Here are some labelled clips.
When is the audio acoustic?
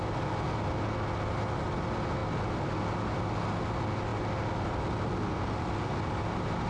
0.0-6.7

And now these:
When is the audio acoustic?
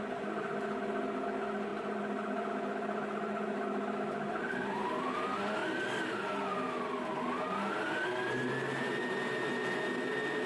0.0-10.5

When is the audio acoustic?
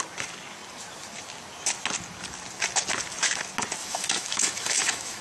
0.0-3.8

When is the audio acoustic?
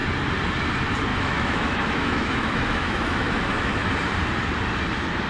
0.0-1.1; 3.9-5.3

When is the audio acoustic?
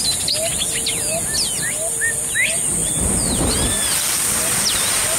0.0-5.2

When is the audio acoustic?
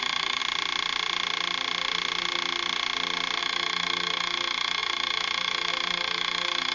0.4-3.4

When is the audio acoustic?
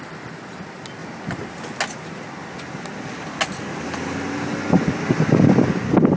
0.0-6.2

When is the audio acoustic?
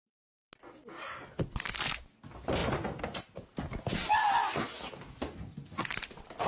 0.0-6.5